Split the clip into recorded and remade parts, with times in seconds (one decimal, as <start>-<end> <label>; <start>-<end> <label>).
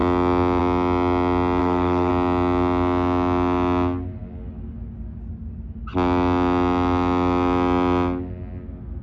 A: 0.0-1.6 recorded; 1.6-2.1 remade; 2.1-9.0 recorded